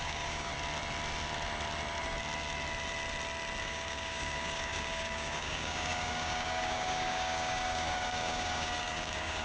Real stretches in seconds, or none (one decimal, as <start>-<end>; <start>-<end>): 0.5-3.6